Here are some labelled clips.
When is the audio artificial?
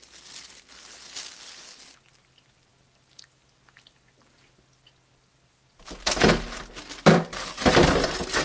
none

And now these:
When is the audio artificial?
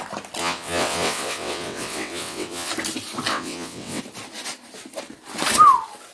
0.4-2.7 (vocoder, WaveNeXt); 3.3-4.0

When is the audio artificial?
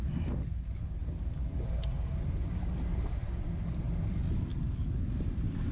4.5-5.0 (codec, DAC)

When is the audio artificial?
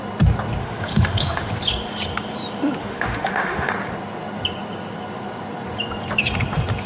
0.6-1.5 (autoencoder, DAC-VAE); 2.8-3.7